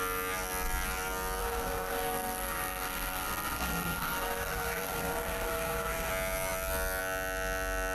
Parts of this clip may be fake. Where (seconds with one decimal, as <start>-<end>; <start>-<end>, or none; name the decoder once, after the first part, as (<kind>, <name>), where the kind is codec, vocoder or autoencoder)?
1.4-6.1 (codec, SNAC)